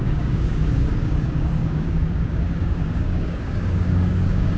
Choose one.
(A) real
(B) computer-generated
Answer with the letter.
B